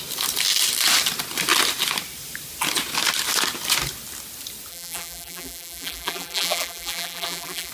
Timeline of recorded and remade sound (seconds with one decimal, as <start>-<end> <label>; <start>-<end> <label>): 0.0-4.7 recorded; 4.7-7.7 remade